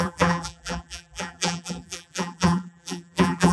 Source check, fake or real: fake